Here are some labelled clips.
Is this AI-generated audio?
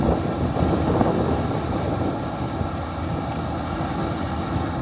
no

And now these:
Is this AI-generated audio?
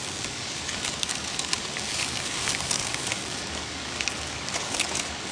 yes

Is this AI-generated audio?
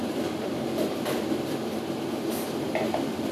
no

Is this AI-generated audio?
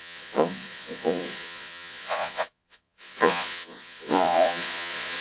yes